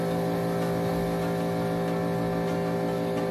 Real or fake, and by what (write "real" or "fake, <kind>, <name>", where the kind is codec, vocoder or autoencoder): real